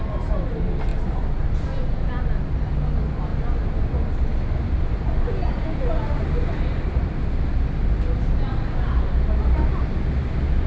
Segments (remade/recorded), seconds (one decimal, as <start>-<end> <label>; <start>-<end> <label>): 0.0-10.7 recorded